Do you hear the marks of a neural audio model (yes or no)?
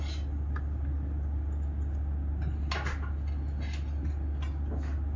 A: no